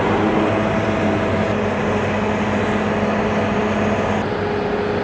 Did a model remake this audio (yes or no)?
no